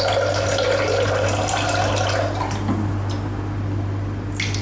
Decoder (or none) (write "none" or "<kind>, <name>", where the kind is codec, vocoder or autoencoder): none